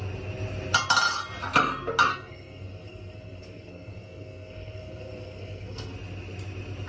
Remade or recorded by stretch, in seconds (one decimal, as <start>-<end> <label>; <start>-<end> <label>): 0.0-2.1 recorded; 2.1-5.9 remade; 5.9-6.9 recorded